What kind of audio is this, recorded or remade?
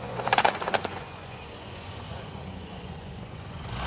remade